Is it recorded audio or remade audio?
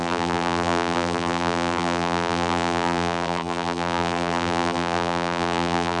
remade